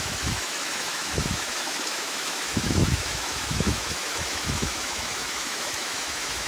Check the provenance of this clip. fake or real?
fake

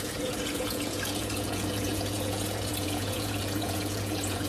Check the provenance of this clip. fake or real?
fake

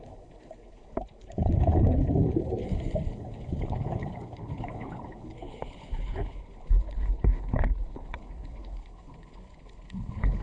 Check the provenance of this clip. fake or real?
fake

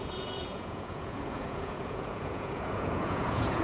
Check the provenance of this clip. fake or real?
fake